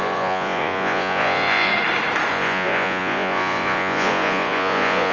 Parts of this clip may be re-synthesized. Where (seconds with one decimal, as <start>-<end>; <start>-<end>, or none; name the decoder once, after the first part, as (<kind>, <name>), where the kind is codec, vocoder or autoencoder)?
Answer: 0.0-1.7 (vocoder, Vocos); 2.3-5.1